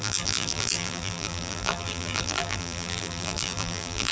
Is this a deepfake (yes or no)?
yes